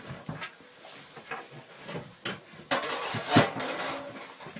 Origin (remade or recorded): recorded